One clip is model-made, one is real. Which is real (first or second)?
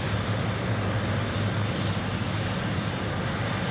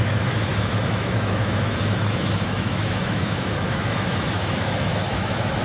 first